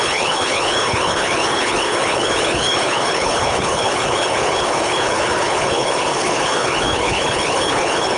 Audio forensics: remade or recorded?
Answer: remade